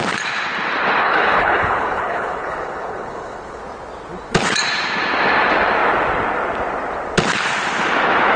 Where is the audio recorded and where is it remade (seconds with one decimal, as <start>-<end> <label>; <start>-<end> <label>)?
0.0-1.0 recorded; 1.0-3.6 remade; 3.6-8.4 recorded

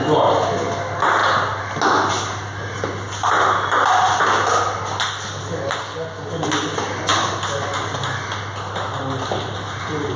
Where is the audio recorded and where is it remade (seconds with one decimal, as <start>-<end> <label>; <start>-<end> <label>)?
0.0-10.2 recorded

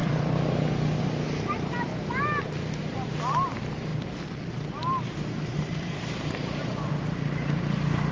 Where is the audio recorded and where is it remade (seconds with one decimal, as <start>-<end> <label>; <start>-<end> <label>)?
0.0-1.0 remade; 1.0-3.9 recorded; 3.9-6.9 remade; 6.9-8.1 recorded

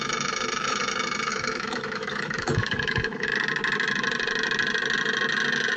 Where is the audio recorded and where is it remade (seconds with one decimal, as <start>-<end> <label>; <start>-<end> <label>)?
0.0-3.3 remade; 3.3-5.8 recorded

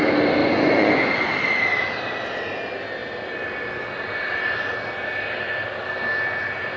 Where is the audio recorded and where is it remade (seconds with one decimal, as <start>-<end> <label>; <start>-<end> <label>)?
0.0-0.4 recorded; 0.4-1.1 remade; 1.1-6.8 recorded